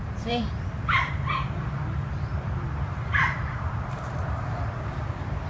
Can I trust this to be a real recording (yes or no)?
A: no